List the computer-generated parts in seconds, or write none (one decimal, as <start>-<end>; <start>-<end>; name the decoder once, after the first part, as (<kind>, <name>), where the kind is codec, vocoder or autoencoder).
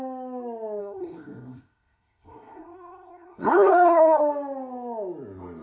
0.8-4.2 (codec, SNAC)